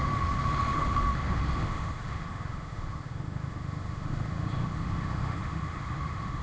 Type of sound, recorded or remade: remade